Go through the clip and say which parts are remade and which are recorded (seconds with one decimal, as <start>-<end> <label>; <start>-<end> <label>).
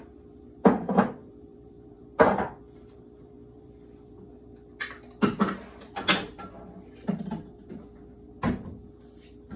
0.0-1.2 recorded; 1.2-4.1 remade; 4.1-9.6 recorded